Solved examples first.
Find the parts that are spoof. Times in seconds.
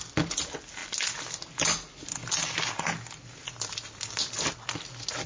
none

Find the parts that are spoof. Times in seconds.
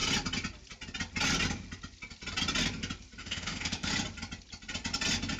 3.2-3.9 (autoencoder, DAC-VAE)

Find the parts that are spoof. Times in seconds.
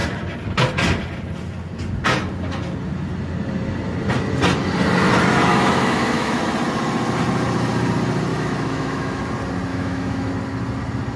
5.5-6.4 (autoencoder, DAC-VAE); 8.3-9.2; 9.7-10.3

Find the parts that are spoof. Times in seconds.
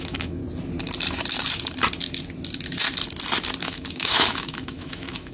0.0-0.4 (autoencoder, DAC-VAE); 3.6-5.3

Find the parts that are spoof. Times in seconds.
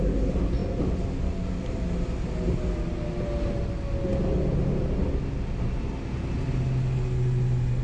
none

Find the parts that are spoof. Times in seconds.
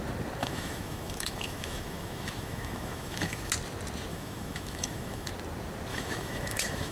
0.4-3.5 (autoencoder, DAC-VAE); 4.1-5.3; 5.9-6.9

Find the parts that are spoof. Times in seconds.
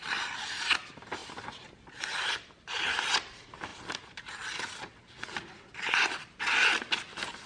none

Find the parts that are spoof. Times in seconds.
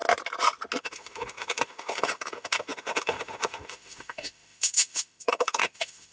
0.8-6.1 (autoencoder, DAC-VAE)